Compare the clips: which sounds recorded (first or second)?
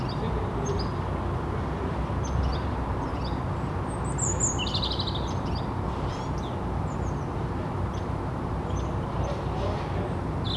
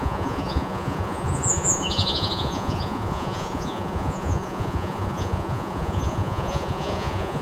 first